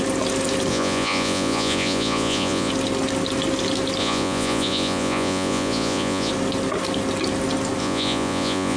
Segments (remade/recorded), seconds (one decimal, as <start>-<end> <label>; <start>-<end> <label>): 0.0-0.7 recorded; 0.7-2.7 remade; 2.7-4.0 recorded; 4.0-6.3 remade; 6.3-7.8 recorded; 7.8-8.8 remade